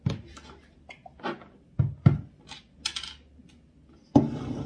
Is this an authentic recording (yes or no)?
yes